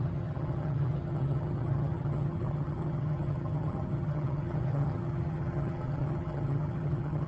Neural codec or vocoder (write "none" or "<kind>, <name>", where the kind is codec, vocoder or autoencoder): vocoder, HiFi-GAN